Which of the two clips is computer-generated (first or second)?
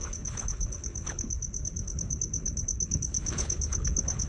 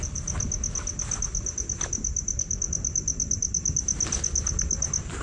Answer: first